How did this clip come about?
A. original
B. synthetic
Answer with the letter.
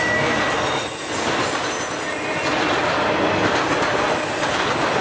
A